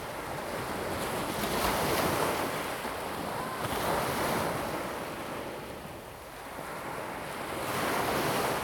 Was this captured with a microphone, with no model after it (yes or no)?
yes